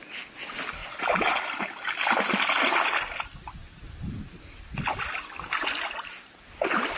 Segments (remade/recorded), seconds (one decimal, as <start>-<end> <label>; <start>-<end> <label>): 0.0-7.0 recorded